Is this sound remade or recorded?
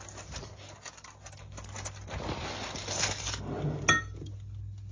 recorded